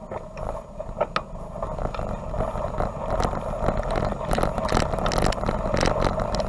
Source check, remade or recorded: recorded